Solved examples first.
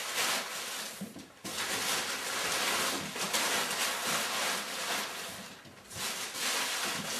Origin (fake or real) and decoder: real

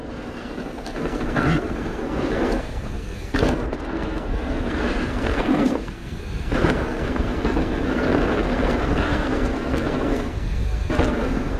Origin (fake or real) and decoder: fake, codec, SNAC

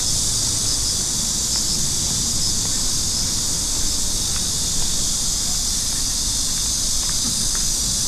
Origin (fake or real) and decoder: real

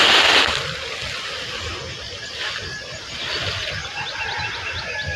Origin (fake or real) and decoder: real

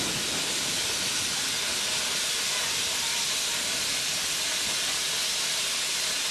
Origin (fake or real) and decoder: real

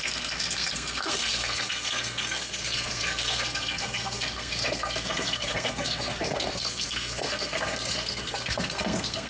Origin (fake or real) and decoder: fake, codec, SNAC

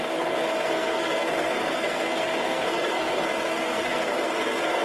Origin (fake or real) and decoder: fake, codec, SNAC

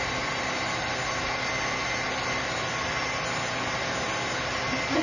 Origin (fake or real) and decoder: real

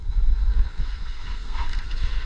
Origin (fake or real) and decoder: fake, codec, SNAC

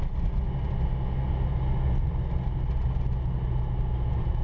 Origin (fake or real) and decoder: real